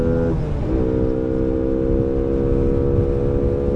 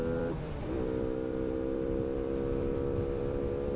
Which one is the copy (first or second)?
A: second